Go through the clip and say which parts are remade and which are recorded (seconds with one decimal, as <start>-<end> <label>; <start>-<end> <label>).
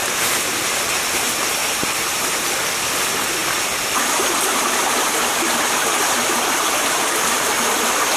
0.0-0.6 remade; 0.6-1.6 recorded; 1.6-2.5 remade; 2.5-8.2 recorded